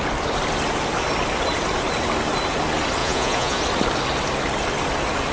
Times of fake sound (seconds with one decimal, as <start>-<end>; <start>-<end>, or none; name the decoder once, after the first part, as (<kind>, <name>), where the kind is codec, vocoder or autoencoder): 3.0-3.6 (vocoder, Vocos)